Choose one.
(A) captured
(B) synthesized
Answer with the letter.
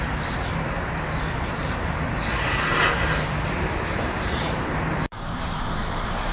B